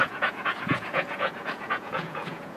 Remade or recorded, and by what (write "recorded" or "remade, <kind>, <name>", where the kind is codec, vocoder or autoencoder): remade, vocoder, Vocos